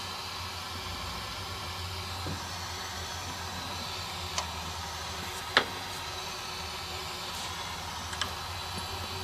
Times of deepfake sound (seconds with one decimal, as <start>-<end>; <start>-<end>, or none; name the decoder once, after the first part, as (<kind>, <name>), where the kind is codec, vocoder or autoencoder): none